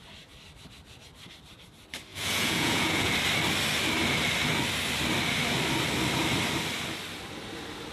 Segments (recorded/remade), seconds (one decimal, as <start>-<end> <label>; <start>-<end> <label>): 0.0-2.1 recorded; 2.1-3.1 remade; 3.1-7.9 recorded